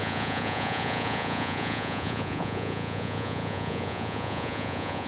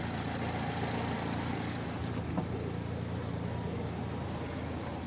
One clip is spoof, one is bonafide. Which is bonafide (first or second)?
second